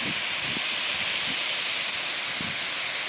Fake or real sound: real